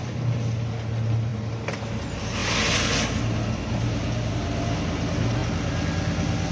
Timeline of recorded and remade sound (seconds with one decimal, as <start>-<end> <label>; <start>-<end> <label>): 0.0-6.5 recorded